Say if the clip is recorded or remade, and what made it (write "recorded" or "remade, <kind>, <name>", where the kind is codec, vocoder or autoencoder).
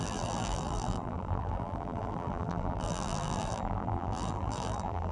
remade, vocoder, BigVGAN v2